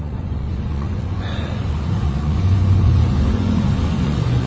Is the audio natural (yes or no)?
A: no